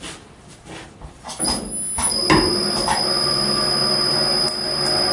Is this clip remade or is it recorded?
recorded